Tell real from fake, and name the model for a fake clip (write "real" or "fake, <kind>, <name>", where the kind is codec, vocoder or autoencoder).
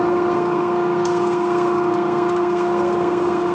fake, codec, SNAC